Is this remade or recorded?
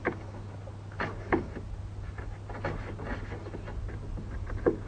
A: recorded